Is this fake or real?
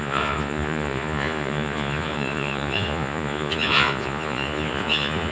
fake